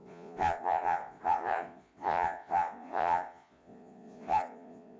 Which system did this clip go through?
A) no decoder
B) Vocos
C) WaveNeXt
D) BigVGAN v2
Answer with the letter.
B